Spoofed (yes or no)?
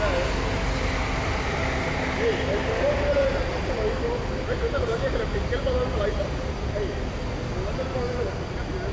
no